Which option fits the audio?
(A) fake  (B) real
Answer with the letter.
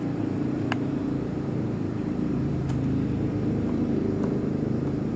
A